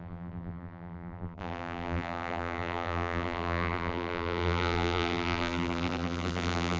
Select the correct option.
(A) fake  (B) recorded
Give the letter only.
A